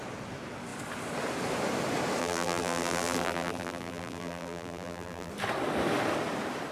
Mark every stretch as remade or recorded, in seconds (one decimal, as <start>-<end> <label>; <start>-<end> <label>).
0.0-2.2 recorded; 2.2-5.3 remade; 5.3-6.7 recorded